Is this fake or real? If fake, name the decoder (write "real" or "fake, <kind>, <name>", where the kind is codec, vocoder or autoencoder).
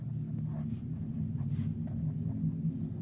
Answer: real